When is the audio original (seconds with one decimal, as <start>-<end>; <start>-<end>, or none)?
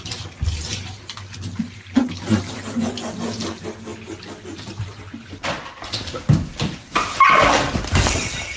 0.0-8.6